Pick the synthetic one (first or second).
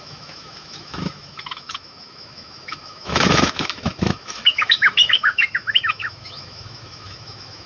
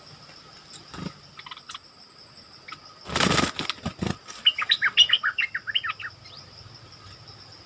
first